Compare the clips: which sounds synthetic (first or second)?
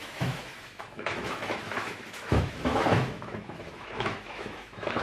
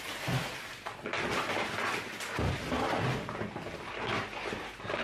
first